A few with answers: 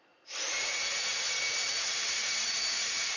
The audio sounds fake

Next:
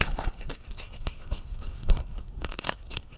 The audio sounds fake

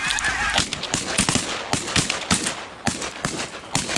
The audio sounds real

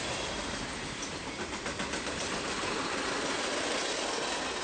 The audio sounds real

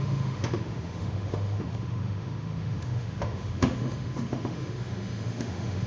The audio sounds fake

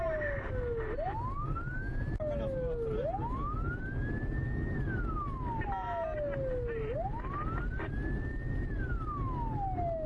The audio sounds real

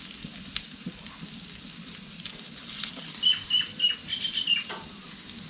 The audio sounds real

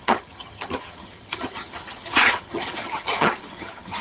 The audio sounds fake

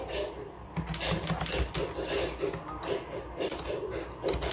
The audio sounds real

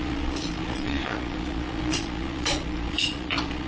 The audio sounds fake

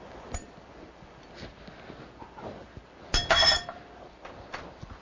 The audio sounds real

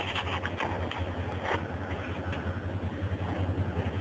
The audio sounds real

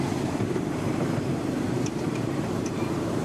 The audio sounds fake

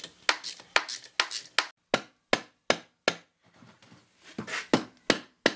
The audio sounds real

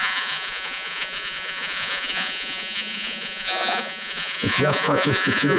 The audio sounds fake